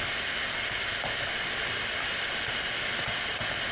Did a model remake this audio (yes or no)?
no